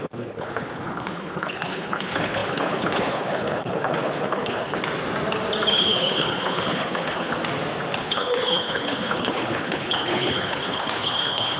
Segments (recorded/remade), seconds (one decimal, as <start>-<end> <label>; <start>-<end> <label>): 0.0-4.8 remade; 4.8-5.7 recorded; 5.7-7.3 remade; 7.3-8.0 recorded; 8.0-11.6 remade